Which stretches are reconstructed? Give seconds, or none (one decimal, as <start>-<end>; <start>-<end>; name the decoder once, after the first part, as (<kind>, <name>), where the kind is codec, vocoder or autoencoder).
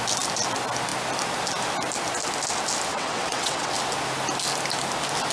2.9-3.7 (vocoder, WaveNeXt)